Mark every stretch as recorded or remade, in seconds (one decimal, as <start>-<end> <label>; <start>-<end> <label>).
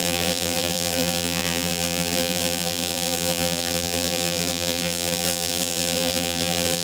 0.0-6.8 remade